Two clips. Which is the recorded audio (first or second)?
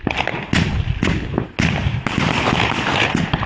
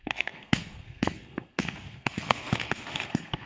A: first